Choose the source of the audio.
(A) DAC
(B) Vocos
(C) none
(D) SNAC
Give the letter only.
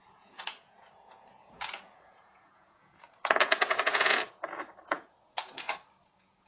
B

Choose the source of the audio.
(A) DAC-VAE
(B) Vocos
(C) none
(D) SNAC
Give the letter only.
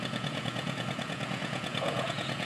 B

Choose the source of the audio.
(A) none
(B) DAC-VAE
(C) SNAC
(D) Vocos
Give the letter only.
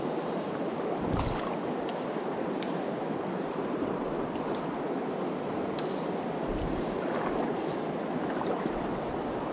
A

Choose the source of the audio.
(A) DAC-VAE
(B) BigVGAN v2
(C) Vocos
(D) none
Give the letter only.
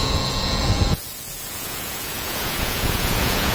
C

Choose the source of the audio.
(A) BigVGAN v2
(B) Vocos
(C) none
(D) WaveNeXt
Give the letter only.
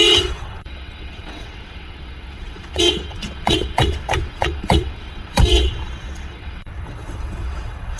D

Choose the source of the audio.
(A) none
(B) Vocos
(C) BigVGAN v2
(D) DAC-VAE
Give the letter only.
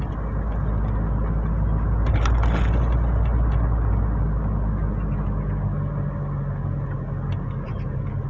A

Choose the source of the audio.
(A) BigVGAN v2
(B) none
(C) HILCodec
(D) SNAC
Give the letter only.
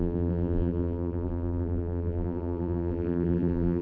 A